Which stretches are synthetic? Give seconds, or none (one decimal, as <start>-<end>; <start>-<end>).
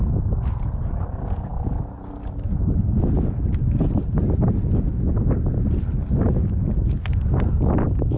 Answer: none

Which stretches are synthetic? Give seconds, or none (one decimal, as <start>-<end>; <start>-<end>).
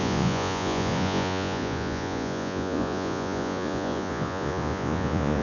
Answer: 0.0-5.4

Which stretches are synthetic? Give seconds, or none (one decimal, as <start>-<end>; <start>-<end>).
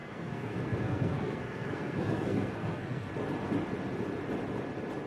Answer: 0.0-3.1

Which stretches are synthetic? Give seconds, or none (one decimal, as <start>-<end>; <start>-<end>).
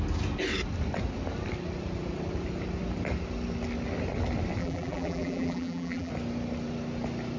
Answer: 4.6-6.1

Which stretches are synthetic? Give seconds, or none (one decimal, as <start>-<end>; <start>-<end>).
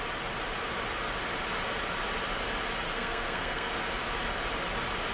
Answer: 2.9-3.7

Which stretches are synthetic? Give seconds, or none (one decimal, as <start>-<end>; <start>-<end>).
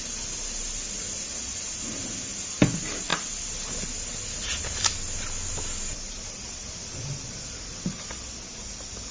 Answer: none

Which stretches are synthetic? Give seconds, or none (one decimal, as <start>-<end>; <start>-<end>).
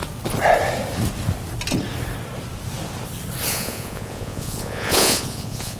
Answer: 3.5-5.8